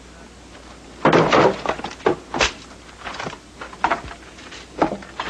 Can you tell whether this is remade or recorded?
recorded